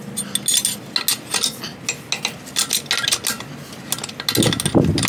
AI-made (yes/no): no